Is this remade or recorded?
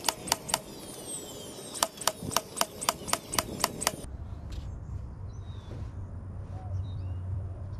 remade